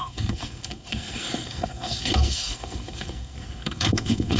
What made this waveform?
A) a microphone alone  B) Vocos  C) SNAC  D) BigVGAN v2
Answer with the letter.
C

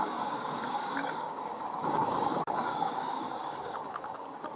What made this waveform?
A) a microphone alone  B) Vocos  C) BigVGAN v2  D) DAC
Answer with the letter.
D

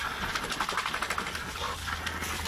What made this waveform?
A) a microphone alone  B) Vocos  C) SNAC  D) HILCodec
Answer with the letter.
A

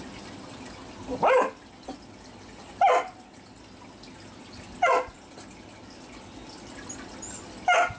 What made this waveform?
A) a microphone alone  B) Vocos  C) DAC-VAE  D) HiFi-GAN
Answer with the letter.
A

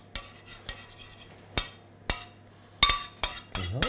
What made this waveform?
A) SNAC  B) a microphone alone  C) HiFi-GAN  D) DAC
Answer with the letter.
B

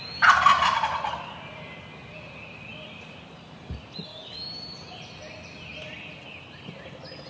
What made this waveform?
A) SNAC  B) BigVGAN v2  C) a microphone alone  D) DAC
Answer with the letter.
C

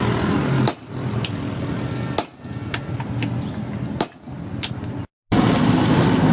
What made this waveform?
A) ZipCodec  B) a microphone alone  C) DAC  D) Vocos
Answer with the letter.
B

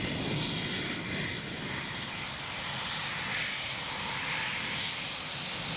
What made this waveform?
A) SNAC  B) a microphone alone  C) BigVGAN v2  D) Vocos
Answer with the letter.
B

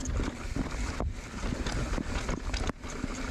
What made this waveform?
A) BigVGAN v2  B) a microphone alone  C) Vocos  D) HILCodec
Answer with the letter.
A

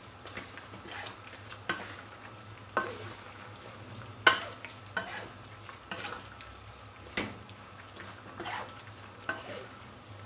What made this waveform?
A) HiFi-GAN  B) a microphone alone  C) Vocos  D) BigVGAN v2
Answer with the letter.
B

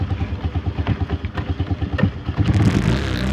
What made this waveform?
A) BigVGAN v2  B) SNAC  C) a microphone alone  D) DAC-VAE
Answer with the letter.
C